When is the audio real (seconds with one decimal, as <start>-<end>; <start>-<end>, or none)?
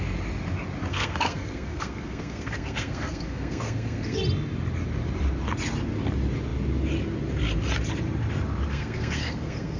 0.0-0.9; 4.2-8.7